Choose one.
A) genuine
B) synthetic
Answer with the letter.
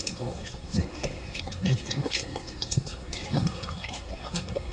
B